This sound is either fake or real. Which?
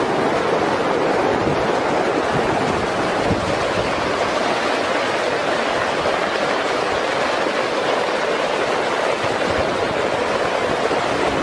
real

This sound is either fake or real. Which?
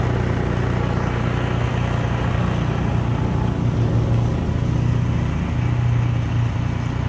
real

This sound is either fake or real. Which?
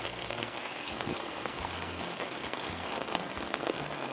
fake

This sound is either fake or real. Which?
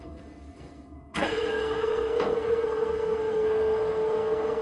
fake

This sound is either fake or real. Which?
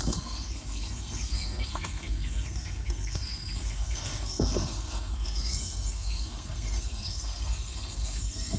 fake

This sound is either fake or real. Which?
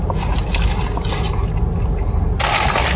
real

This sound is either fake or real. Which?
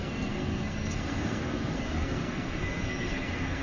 fake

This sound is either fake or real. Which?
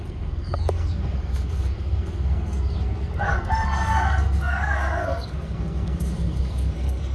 fake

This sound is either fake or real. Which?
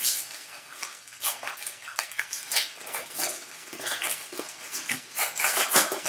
fake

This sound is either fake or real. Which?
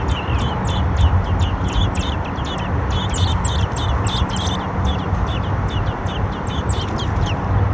real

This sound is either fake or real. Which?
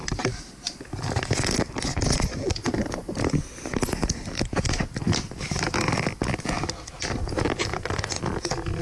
real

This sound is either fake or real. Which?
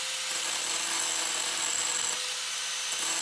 real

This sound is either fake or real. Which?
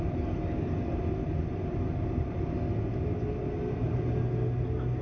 real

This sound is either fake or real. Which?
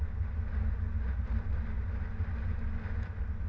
real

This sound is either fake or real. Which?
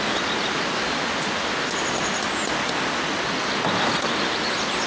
real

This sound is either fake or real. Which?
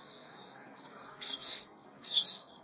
fake